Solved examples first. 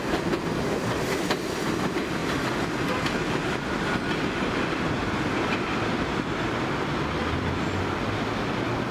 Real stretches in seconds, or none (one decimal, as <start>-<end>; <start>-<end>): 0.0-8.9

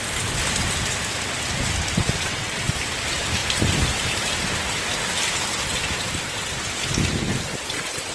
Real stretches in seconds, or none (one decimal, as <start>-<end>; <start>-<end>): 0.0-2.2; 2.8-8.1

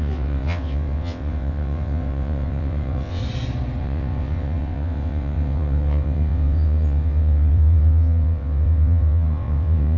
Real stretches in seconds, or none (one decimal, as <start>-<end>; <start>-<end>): 3.2-3.8

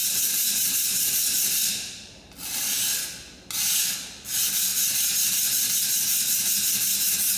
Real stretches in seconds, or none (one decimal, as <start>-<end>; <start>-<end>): 2.3-7.4